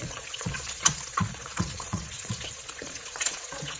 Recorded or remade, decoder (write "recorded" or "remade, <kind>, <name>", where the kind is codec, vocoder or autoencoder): remade, vocoder, Vocos